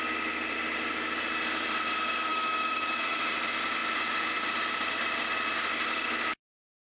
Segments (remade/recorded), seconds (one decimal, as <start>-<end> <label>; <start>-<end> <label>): 0.0-2.3 recorded; 2.3-3.3 remade; 3.3-7.0 recorded